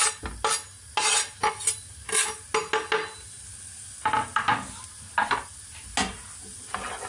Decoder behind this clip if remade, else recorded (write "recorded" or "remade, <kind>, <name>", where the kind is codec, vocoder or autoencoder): recorded